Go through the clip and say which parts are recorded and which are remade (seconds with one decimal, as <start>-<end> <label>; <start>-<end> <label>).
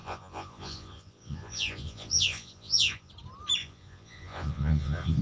0.0-3.1 remade; 3.1-3.6 recorded; 3.6-5.2 remade